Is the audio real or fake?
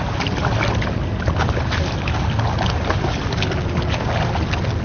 real